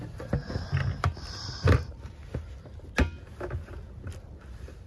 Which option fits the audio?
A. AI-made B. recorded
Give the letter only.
B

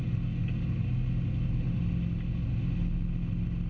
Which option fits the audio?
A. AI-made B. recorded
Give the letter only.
B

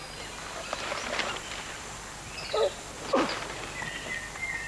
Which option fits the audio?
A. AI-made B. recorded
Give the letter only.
B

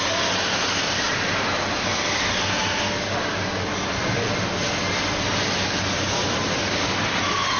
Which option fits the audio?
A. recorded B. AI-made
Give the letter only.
A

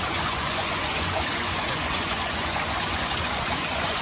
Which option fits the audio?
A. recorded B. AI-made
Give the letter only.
B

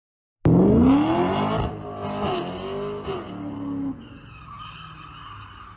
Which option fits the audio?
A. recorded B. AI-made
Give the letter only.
A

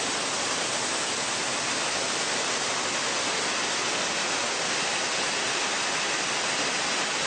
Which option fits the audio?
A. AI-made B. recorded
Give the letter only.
B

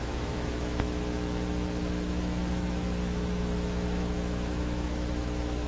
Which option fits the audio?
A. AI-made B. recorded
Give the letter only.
A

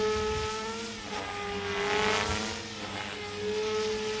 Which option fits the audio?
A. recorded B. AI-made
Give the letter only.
A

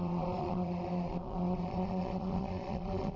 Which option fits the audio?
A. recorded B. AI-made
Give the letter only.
B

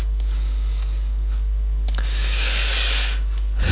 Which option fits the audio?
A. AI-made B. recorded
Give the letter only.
A